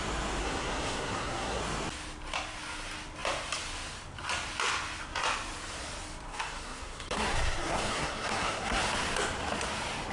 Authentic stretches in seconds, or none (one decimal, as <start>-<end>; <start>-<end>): 0.0-0.4; 1.6-6.3; 8.8-10.1